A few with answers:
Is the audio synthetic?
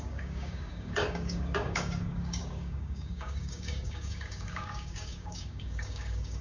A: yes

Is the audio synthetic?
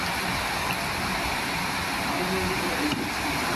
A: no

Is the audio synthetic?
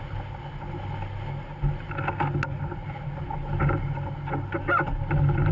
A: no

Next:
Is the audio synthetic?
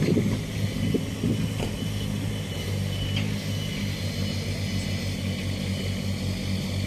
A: no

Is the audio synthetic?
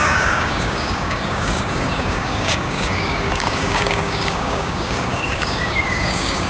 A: yes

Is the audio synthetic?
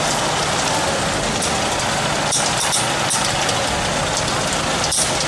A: no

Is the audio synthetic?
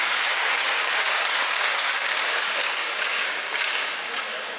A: yes